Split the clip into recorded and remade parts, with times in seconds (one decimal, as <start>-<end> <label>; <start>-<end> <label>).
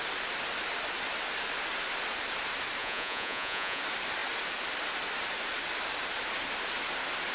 0.0-2.8 recorded; 2.8-3.8 remade; 3.8-7.3 recorded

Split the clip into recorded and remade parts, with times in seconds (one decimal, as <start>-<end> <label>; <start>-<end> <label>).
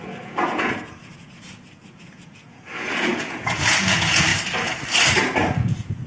0.0-4.3 remade; 4.3-5.6 recorded; 5.6-6.1 remade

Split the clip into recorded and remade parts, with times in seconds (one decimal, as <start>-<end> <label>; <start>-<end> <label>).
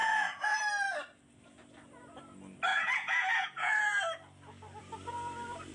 0.0-0.6 remade; 0.6-2.7 recorded; 2.7-4.0 remade; 4.0-5.7 recorded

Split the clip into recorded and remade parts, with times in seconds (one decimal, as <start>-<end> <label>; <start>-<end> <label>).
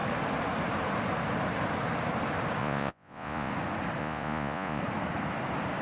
0.0-2.6 recorded; 2.6-3.5 remade; 3.5-4.0 recorded; 4.0-4.8 remade; 4.8-5.8 recorded